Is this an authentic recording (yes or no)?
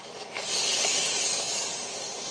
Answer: no